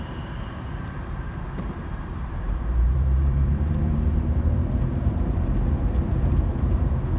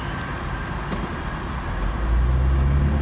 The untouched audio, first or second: second